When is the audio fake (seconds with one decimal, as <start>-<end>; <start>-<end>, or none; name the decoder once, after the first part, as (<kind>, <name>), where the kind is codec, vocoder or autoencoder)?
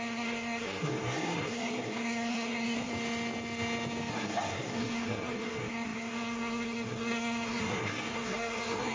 0.0-2.9 (codec, SNAC); 4.1-8.9